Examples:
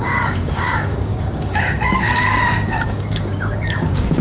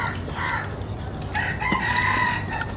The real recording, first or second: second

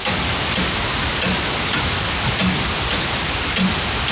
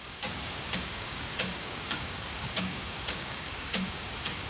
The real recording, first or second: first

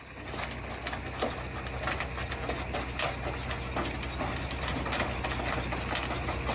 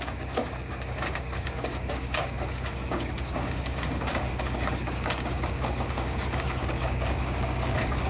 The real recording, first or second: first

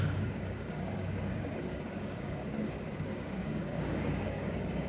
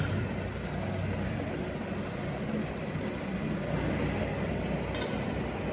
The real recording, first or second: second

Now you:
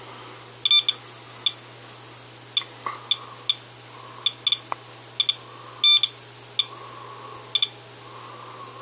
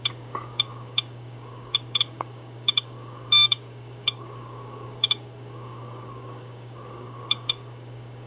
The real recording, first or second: first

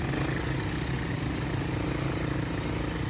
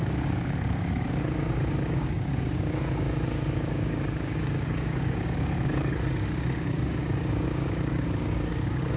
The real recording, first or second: first